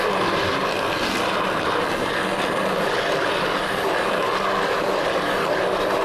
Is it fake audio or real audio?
real